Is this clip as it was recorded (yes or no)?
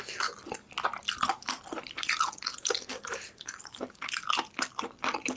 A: yes